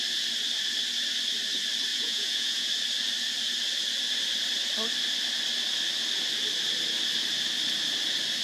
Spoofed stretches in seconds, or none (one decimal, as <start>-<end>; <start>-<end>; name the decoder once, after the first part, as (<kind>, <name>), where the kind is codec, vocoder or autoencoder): 1.9-2.7 (vocoder, Vocos)